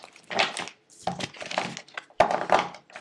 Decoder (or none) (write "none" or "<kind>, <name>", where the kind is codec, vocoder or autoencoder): none